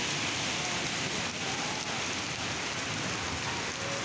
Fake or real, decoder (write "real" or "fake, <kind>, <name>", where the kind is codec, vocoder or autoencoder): real